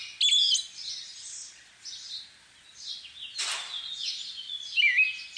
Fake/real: real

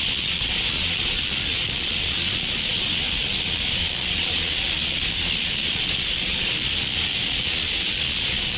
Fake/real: fake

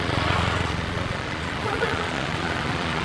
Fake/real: fake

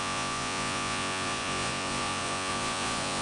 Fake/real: fake